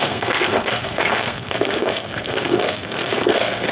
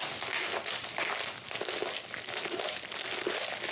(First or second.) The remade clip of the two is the first